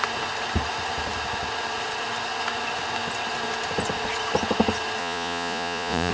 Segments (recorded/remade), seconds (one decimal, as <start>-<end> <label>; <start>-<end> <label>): 0.0-5.0 recorded; 5.0-6.1 remade